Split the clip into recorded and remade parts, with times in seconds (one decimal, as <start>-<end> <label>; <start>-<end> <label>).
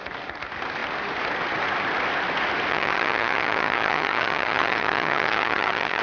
0.0-2.7 recorded; 2.7-6.0 remade